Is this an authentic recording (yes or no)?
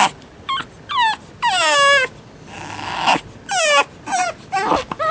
yes